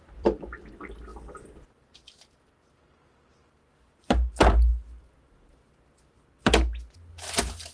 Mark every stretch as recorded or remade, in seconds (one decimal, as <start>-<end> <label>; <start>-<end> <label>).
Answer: 0.0-0.7 remade; 0.7-7.7 recorded